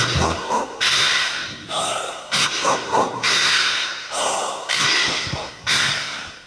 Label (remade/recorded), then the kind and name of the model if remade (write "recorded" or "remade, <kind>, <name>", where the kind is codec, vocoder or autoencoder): remade, codec, SNAC